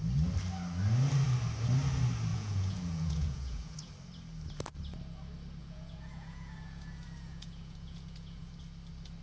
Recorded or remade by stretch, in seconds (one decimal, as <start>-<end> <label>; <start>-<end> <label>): 0.0-2.3 recorded; 2.3-3.9 remade; 3.9-5.6 recorded; 5.6-8.5 remade; 8.5-9.2 recorded